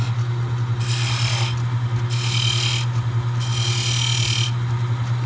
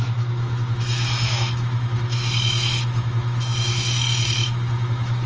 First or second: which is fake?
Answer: second